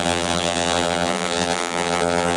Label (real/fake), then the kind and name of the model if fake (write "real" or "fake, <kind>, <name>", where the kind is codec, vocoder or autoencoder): fake, vocoder, BigVGAN v2